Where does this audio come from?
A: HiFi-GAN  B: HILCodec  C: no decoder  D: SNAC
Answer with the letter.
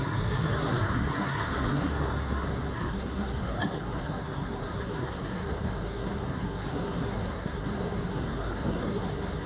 D